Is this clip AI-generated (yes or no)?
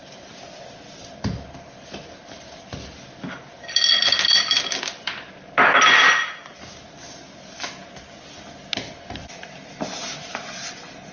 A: no